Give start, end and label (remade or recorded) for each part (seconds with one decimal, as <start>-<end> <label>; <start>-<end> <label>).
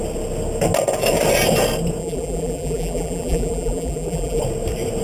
0.0-2.0 recorded; 2.0-4.4 remade; 4.4-5.0 recorded